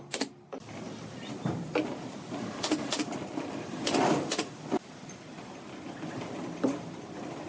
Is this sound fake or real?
real